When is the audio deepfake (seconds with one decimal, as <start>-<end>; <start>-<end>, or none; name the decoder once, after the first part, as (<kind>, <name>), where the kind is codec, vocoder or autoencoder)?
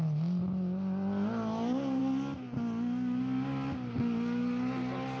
none